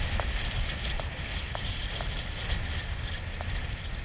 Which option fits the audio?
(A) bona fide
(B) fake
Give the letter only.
A